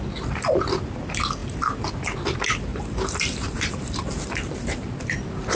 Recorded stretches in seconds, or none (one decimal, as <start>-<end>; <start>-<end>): 0.0-2.7; 4.2-5.5

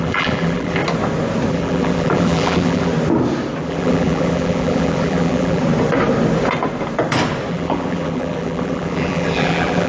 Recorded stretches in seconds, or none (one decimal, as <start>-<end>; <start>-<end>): 0.8-1.5; 2.9-3.6; 5.6-7.5

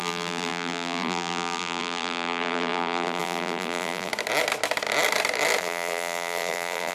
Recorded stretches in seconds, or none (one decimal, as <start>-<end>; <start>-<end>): 4.1-5.6

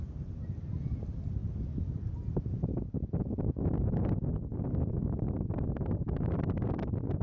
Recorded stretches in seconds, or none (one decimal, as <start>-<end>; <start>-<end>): 0.0-7.2

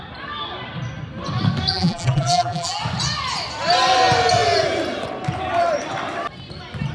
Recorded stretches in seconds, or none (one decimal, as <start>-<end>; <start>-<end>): 0.0-1.7; 2.8-6.9